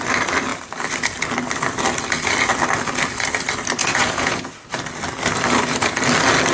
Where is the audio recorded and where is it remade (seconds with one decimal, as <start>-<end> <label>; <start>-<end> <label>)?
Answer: 0.0-3.8 recorded; 3.8-4.5 remade; 4.5-6.5 recorded